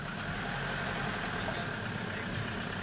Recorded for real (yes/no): yes